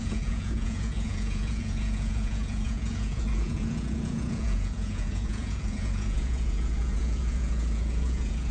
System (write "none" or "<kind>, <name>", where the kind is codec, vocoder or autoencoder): vocoder, Vocos